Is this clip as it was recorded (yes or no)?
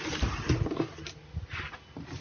yes